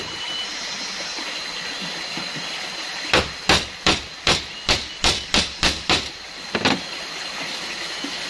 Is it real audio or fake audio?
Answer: real